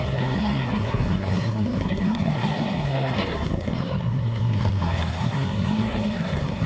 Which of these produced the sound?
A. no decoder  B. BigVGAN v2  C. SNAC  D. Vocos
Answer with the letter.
C